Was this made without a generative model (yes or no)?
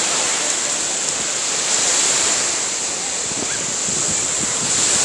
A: yes